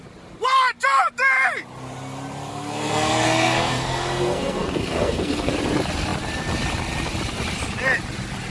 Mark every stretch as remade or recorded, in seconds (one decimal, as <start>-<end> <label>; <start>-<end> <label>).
0.0-2.5 recorded; 2.5-5.5 remade; 5.5-8.5 recorded